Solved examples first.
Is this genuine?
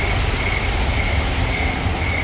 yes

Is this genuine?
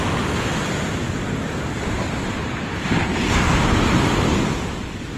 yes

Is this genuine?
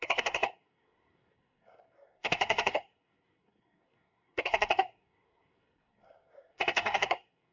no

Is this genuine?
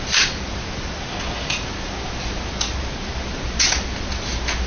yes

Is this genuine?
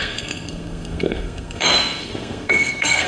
no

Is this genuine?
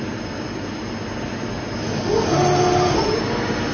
yes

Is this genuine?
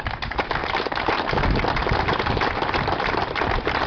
yes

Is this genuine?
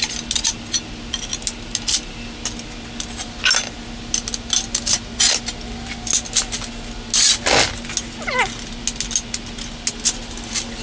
yes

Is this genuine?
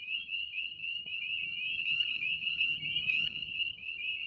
no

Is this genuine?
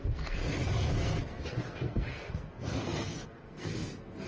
no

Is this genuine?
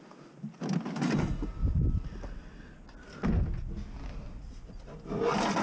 yes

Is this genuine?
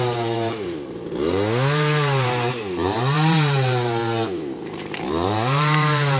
no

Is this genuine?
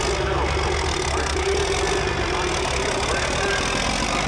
yes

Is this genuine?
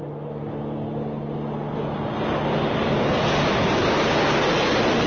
yes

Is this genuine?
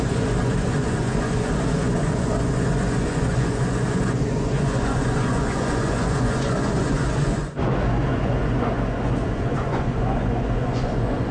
no